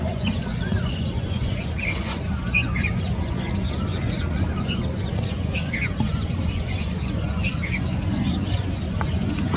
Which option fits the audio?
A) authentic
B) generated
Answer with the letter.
B